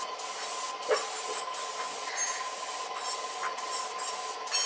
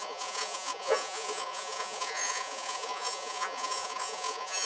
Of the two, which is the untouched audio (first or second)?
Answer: first